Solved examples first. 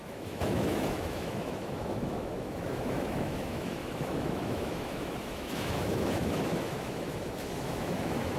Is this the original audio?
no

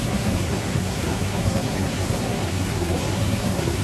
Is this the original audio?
no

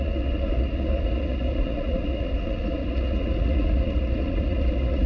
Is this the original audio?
no